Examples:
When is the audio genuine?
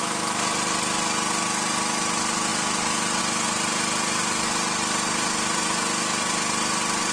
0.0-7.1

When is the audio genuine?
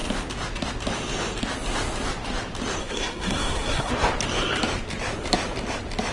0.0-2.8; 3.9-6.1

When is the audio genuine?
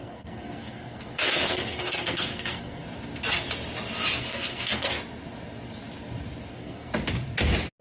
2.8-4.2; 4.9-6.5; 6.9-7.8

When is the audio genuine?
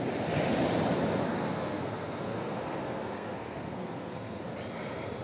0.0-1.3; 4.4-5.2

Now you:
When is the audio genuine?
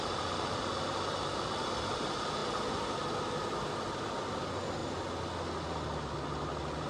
0.0-6.9